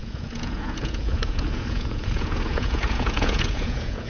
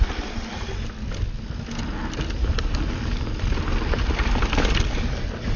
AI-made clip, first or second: first